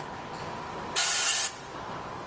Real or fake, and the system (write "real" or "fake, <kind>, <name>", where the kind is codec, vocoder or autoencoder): real